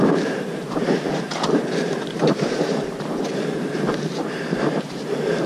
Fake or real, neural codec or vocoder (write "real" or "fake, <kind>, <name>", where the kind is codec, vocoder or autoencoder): fake, vocoder, BigVGAN v2